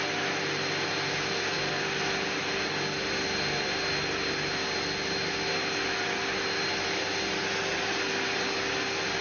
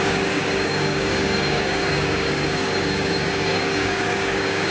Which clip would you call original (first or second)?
first